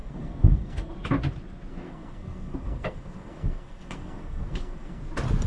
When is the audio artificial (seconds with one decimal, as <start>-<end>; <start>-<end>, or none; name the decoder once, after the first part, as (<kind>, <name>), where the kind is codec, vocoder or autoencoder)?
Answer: 0.0-0.9 (codec, SNAC); 1.7-5.0